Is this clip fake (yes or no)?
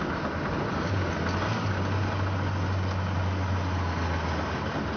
no